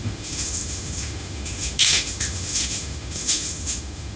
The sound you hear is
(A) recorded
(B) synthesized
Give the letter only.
B